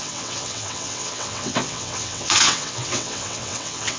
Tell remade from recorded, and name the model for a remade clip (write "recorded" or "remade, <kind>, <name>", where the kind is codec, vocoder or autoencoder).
remade, vocoder, WaveNeXt